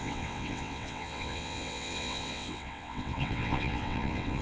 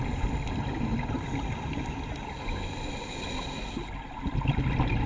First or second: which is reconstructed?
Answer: first